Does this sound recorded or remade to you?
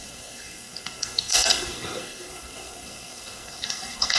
remade